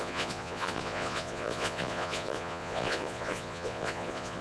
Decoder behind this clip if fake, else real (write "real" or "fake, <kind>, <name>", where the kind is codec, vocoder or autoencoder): fake, vocoder, Vocos